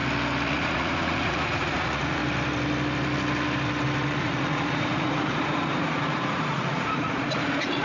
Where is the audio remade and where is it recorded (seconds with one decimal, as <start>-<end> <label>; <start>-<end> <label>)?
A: 0.0-0.5 recorded; 0.5-2.2 remade; 2.2-4.2 recorded; 4.2-7.8 remade